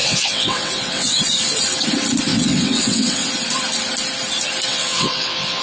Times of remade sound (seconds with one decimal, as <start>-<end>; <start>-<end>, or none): 0.0-1.2; 2.3-3.3; 4.7-5.6